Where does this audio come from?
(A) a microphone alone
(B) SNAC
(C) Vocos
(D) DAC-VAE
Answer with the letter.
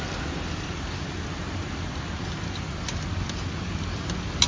A